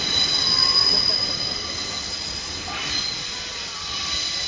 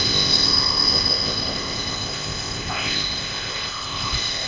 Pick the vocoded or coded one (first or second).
second